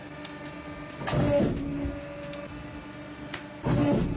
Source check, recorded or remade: recorded